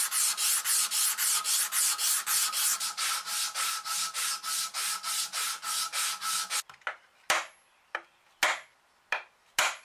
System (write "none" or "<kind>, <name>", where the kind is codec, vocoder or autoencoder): none